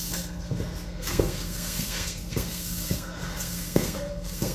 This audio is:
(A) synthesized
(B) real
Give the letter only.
A